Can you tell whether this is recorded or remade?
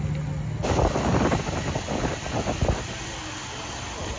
recorded